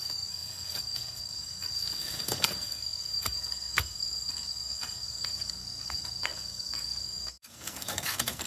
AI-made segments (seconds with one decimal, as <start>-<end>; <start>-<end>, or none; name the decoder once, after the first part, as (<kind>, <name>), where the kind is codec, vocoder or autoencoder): 0.0-8.5 (codec, SNAC)

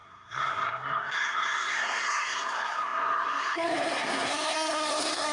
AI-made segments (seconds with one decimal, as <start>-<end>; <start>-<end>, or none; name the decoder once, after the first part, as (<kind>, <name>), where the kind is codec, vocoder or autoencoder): 0.0-5.3 (codec, SNAC)

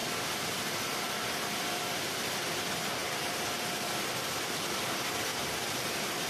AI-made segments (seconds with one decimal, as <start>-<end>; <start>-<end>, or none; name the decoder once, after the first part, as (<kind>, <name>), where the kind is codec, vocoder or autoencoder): none

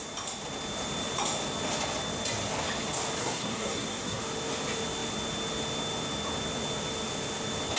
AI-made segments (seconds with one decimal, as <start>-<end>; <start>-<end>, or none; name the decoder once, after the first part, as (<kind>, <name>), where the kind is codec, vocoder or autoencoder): 3.2-4.2 (codec, SNAC)